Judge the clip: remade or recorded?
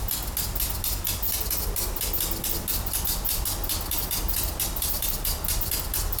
recorded